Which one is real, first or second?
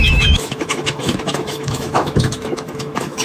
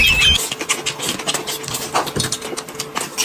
second